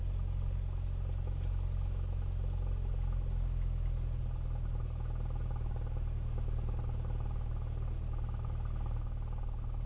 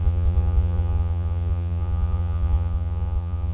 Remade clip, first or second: second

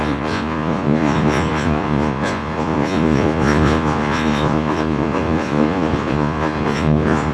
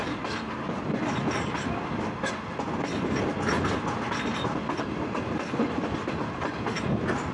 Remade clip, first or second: first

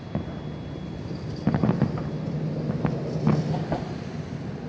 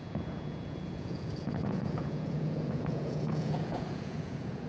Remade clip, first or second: second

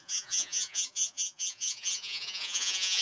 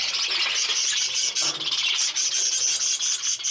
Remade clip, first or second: first